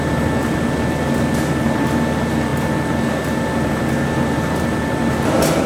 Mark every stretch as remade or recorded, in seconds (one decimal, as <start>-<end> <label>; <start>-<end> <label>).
0.0-5.7 recorded